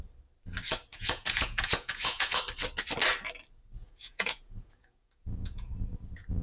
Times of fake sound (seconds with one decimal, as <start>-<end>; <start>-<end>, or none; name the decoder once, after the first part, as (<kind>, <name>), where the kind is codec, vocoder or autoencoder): 0.9-2.4 (vocoder, Vocos); 3.8-5.7